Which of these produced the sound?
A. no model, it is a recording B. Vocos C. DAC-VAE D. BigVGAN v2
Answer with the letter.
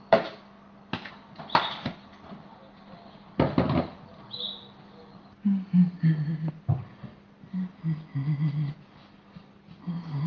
A